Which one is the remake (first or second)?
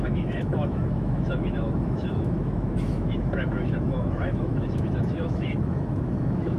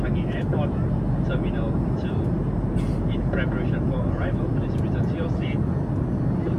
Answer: first